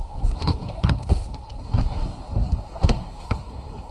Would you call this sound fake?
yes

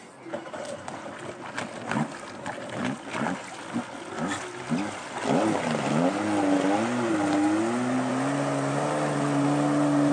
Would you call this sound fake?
no